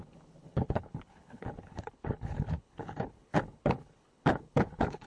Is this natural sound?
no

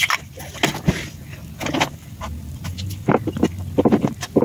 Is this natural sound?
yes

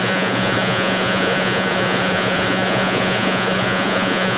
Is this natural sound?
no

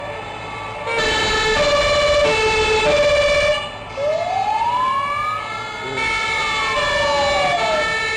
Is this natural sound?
yes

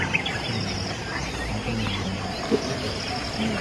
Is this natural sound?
yes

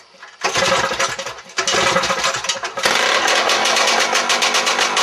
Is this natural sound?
yes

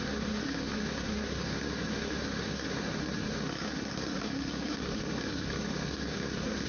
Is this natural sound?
no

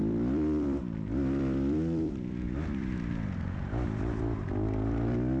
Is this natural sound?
no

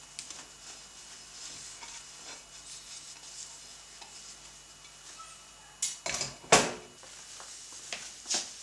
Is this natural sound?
yes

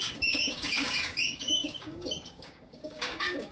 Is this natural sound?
no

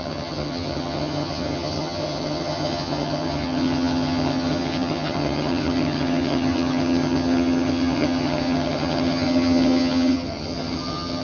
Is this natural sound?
no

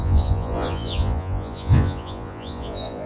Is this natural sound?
no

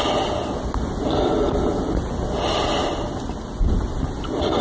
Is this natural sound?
yes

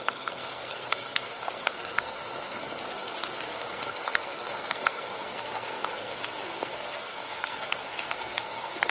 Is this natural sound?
no